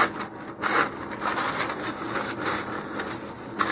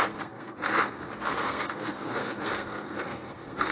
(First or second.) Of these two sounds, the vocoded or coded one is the second